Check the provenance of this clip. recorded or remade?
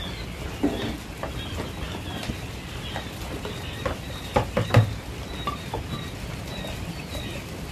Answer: recorded